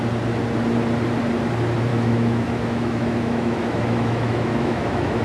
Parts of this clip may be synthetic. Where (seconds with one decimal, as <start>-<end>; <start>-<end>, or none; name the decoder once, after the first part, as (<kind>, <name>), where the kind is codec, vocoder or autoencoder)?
1.9-5.2 (autoencoder, DAC-VAE)